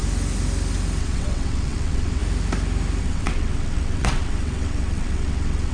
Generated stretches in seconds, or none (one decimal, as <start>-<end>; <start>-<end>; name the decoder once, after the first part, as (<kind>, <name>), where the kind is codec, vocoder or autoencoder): 1.0-2.2 (vocoder, WaveNeXt); 3.0-5.7